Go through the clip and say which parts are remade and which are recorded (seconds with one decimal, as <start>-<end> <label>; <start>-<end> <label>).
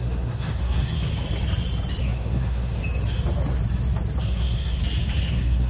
0.0-1.1 remade; 1.1-2.0 recorded; 2.0-2.8 remade; 2.8-4.2 recorded; 4.2-4.8 remade; 4.8-5.3 recorded; 5.3-5.7 remade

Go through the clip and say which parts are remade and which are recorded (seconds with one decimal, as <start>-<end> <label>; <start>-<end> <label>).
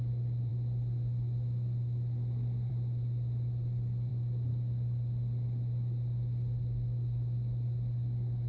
0.0-8.5 recorded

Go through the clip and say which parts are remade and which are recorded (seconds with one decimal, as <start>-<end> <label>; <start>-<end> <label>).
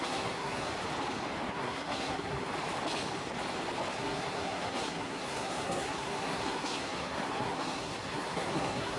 0.0-0.7 remade; 0.7-1.5 recorded; 1.5-2.5 remade; 2.5-3.9 recorded; 3.9-9.0 remade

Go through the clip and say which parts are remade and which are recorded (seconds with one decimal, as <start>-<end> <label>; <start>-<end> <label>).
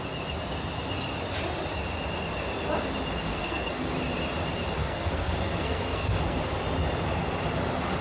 0.0-3.3 recorded; 3.3-3.8 remade; 3.8-4.8 recorded; 4.8-6.4 remade; 6.4-8.0 recorded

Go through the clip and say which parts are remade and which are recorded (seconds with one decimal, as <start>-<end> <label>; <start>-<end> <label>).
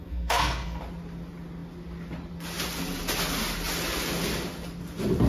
0.0-0.8 remade; 0.8-5.3 recorded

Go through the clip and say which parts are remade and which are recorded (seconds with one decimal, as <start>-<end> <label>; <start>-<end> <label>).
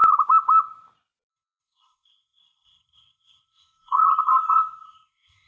0.0-1.3 recorded; 1.3-5.5 remade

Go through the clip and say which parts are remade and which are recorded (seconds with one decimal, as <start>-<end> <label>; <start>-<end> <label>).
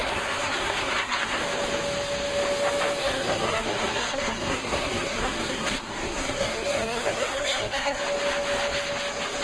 0.0-1.4 remade; 1.4-3.0 recorded; 3.0-8.0 remade; 8.0-9.4 recorded